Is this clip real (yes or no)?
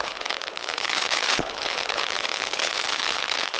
no